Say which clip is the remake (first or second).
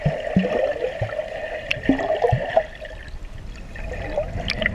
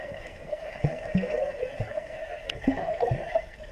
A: second